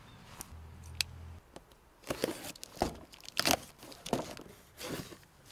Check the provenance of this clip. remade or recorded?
recorded